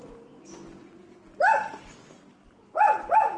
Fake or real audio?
real